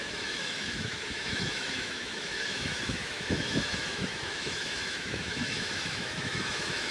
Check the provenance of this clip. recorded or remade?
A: remade